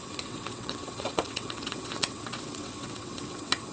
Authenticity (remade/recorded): remade